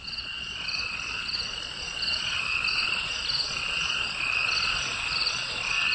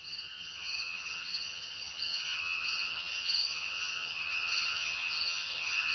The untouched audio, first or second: first